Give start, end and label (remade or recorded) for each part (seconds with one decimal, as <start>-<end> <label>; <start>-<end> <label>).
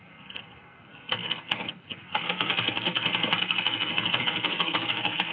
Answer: 0.0-5.3 remade